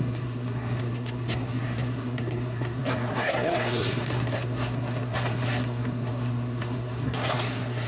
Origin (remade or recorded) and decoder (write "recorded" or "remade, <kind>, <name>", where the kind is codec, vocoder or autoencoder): remade, codec, SNAC